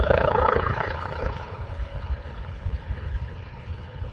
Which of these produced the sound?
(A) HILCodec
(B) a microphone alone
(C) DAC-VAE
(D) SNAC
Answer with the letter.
A